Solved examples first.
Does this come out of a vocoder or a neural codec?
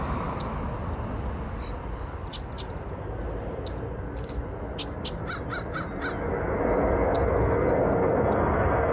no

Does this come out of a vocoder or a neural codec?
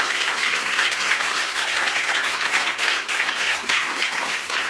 yes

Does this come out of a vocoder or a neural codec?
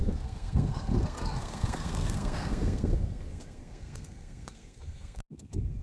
yes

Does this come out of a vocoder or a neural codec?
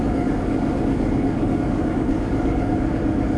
yes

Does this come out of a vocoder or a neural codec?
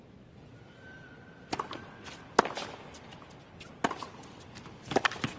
no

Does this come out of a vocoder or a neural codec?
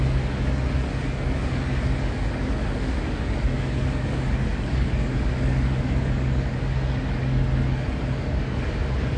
yes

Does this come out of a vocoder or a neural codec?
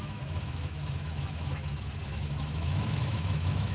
yes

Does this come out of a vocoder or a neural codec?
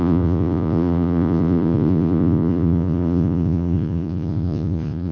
yes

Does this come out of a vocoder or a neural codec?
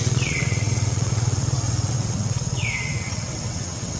yes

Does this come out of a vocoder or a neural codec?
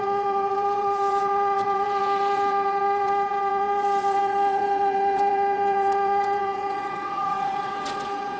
yes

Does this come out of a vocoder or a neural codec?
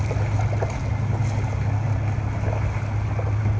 no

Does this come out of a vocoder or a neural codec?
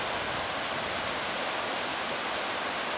no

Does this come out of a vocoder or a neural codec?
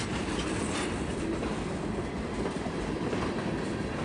yes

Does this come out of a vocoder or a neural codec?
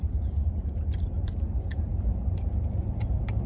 yes